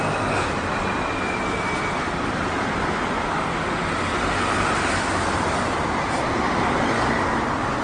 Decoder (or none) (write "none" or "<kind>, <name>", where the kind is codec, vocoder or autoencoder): none